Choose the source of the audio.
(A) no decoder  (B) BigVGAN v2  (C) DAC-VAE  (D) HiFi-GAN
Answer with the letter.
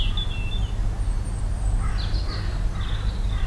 A